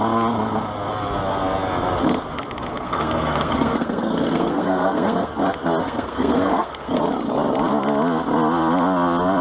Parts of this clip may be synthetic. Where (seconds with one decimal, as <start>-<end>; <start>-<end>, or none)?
2.7-5.3; 5.8-7.0